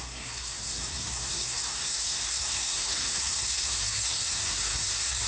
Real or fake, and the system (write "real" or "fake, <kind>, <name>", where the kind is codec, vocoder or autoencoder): fake, codec, SNAC